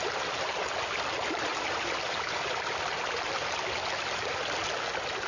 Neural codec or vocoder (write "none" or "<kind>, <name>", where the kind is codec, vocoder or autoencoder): none